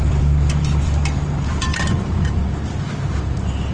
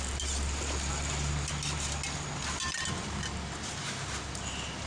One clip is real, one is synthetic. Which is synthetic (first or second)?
first